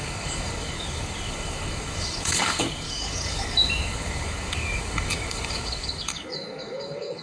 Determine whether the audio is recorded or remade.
remade